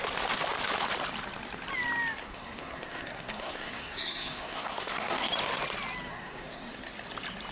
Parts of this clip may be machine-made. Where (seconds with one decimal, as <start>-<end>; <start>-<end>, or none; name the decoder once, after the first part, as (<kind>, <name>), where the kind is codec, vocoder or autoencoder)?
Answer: 2.2-5.3 (codec, SNAC); 6.1-6.7